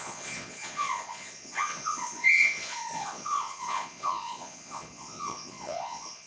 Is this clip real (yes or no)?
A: no